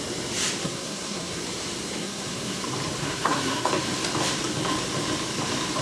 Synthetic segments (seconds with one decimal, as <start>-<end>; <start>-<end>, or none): 0.6-1.4; 2.0-2.6; 3.0-3.7